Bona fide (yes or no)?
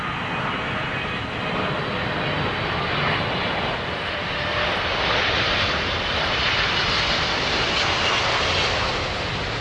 yes